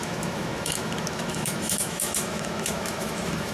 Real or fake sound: fake